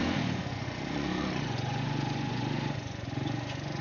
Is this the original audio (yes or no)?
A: no